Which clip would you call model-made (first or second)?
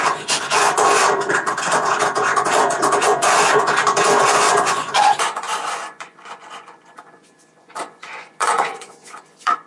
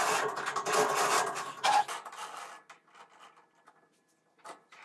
first